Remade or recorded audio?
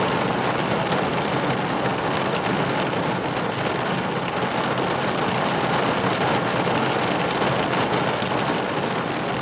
recorded